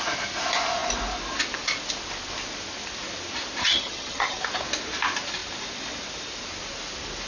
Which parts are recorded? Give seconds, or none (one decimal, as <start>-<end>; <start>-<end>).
0.0-3.6; 4.4-7.3